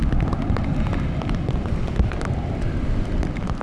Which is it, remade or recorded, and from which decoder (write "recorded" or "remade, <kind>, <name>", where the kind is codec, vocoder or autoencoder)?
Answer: recorded